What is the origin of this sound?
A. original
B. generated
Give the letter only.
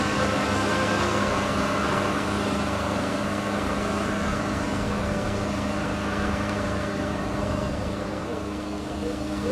B